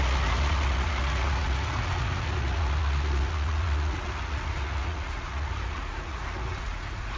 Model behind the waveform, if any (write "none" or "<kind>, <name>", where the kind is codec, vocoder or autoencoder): vocoder, Vocos